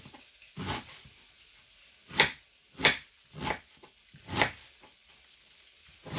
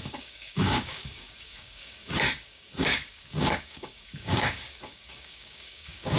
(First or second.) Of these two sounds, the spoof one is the second